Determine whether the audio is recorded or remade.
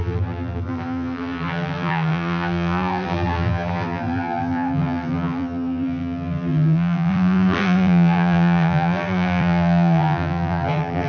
remade